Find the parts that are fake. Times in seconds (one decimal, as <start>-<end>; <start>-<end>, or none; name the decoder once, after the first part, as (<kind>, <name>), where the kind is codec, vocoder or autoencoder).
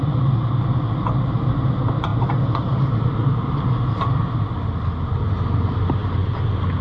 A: none